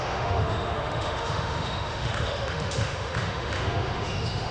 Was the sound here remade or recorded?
remade